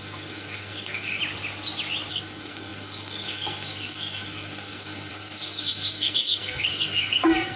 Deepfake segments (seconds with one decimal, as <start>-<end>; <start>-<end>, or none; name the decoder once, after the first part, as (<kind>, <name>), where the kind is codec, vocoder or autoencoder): 0.0-1.2 (codec, SNAC); 2.1-7.6